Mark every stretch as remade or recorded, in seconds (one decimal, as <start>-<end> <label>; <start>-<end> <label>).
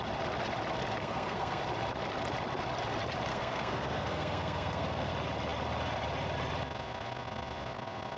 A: 0.0-1.0 recorded; 1.0-1.6 remade; 1.6-3.3 recorded; 3.3-5.1 remade; 5.1-8.2 recorded